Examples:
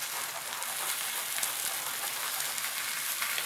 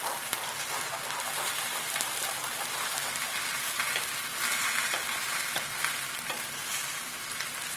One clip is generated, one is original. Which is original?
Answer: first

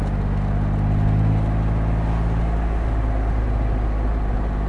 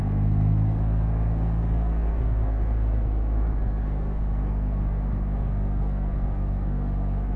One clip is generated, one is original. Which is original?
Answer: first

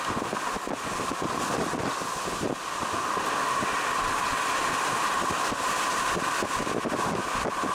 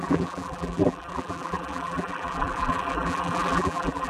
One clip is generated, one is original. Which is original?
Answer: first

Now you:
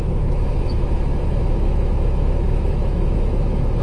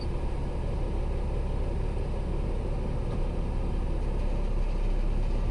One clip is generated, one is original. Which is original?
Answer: second